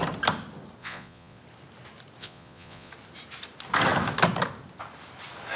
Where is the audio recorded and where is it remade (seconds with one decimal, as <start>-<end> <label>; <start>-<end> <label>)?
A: 0.0-0.8 recorded; 0.8-1.4 remade; 1.4-2.2 recorded; 2.2-2.9 remade; 2.9-5.6 recorded